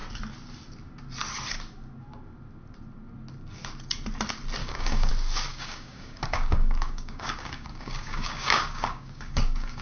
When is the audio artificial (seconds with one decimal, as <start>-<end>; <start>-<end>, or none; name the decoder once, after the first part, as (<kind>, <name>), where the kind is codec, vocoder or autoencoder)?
4.6-5.1 (codec, DAC); 5.5-9.8